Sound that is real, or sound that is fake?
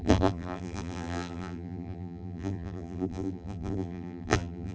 fake